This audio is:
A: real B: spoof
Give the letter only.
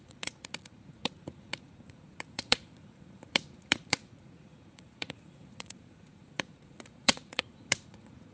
B